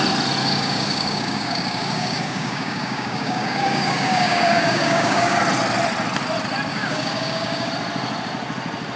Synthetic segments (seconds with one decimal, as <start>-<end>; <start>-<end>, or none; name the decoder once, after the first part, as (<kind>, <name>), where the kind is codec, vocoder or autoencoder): 0.4-5.4 (codec, DAC); 6.7-7.7